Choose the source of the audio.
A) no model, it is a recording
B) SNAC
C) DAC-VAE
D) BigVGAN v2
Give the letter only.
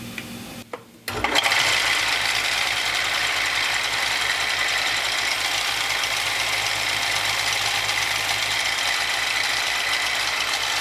A